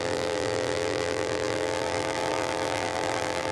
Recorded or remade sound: remade